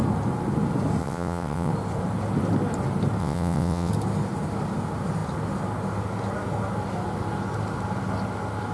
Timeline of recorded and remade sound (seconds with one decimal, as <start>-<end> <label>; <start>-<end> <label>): 0.0-1.0 recorded; 1.0-1.7 remade; 1.7-3.2 recorded; 3.2-3.9 remade; 3.9-8.7 recorded